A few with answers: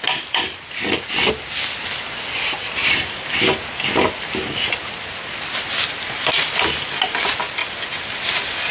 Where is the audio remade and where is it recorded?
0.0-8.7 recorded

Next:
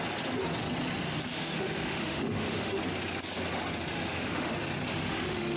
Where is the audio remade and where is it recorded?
0.0-1.3 recorded; 1.3-2.8 remade; 2.8-3.9 recorded; 3.9-4.5 remade; 4.5-4.9 recorded; 4.9-5.6 remade

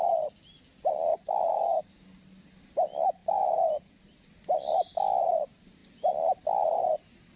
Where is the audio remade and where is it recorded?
0.0-1.1 recorded; 1.1-1.8 remade; 1.8-3.2 recorded; 3.2-3.9 remade; 3.9-7.4 recorded

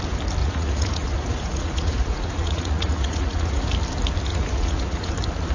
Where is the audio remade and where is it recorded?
0.0-0.4 recorded; 0.4-3.7 remade; 3.7-4.3 recorded; 4.3-5.1 remade; 5.1-5.5 recorded